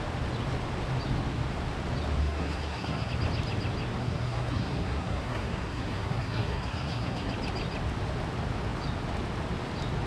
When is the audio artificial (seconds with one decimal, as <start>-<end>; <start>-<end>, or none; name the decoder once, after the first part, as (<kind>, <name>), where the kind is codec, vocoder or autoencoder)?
2.2-3.1 (codec, SNAC); 4.0-7.3